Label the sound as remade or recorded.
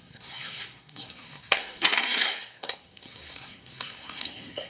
remade